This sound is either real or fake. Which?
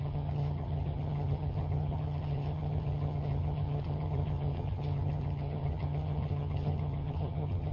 fake